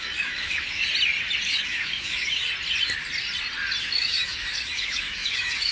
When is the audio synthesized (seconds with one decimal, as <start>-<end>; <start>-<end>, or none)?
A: 0.0-0.8; 1.5-2.5; 3.8-5.7